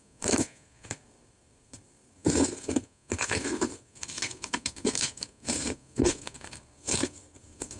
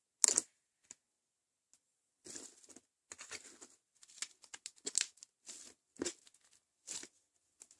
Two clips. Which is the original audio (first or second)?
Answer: second